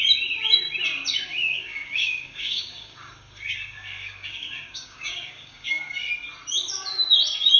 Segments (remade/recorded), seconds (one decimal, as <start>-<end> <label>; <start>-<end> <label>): 0.0-1.3 recorded; 1.3-5.9 remade; 5.9-7.6 recorded